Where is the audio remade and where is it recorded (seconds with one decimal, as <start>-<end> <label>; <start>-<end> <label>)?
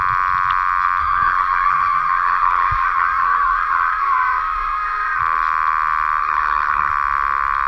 0.0-1.0 recorded; 1.0-5.2 remade; 5.2-6.2 recorded; 6.2-6.9 remade; 6.9-7.7 recorded